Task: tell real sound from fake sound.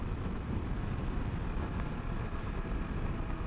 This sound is real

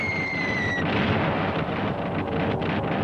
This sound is real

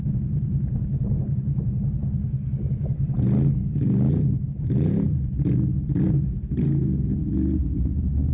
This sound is real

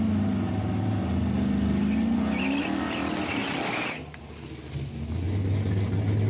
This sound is real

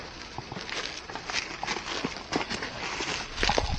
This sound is real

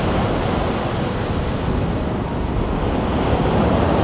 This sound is real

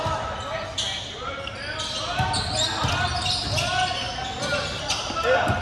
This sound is real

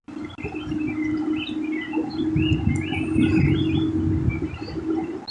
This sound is real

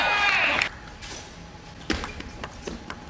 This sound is real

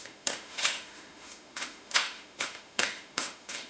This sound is fake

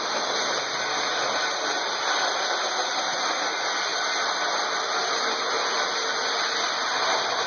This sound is real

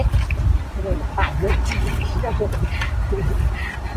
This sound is real